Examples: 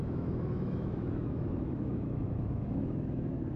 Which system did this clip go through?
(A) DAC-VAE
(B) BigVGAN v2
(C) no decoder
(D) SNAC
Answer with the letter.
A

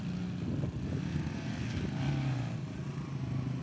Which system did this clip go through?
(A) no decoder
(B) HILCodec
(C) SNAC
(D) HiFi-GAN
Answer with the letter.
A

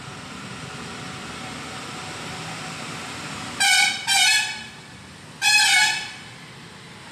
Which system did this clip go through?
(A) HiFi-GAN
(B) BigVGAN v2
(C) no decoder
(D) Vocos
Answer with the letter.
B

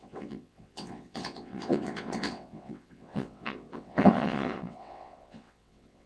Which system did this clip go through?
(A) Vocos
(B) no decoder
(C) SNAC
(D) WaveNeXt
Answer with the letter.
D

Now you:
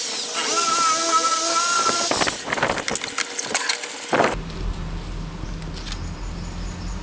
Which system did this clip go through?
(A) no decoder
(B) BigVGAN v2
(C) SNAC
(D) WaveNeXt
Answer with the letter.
A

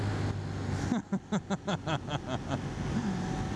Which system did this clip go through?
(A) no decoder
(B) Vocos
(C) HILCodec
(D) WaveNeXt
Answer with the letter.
A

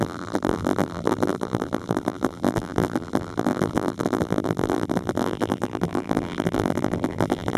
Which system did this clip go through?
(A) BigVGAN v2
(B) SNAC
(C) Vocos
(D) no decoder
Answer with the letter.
A